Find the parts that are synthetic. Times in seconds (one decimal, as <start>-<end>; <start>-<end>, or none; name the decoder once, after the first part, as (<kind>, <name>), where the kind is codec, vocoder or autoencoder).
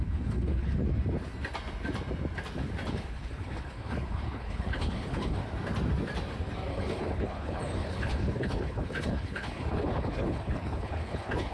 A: 0.0-0.8 (codec, HILCodec); 2.9-5.4; 6.7-11.5